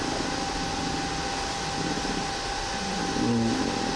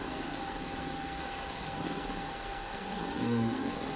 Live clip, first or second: first